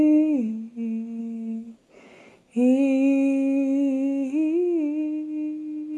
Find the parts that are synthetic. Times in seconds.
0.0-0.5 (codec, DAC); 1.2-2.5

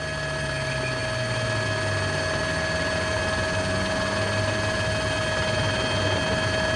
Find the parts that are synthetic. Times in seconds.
none

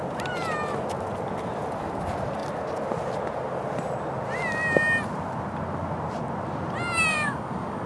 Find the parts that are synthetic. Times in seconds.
7.1-7.9 (codec, DAC)

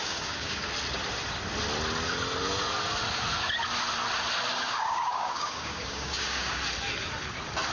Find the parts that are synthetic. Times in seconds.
0.0-0.6 (codec, DAC); 4.5-6.6

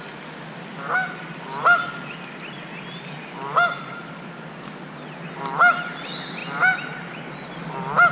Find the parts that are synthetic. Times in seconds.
none

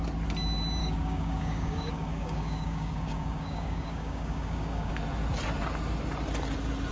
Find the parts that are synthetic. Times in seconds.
0.8-4.9 (codec, DAC)